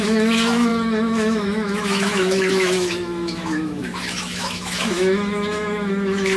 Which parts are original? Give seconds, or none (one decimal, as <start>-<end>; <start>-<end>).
none

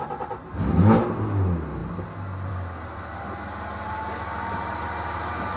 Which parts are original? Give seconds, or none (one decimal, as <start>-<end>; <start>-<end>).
0.0-5.6